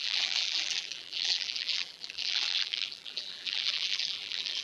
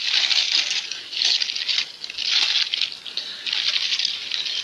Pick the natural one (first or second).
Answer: second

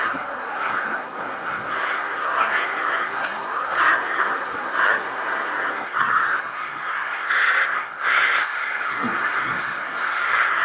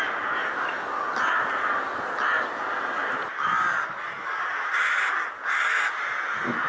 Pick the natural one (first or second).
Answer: second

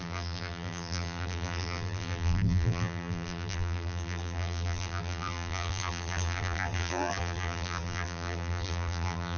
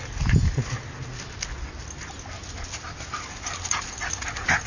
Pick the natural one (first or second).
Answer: second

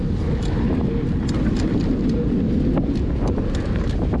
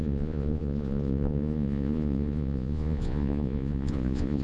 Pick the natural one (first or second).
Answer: first